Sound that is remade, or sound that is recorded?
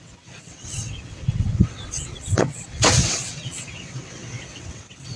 remade